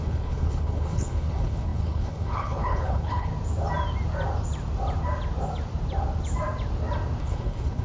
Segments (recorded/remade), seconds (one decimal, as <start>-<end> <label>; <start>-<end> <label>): 0.0-3.3 remade; 3.3-7.2 recorded; 7.2-7.8 remade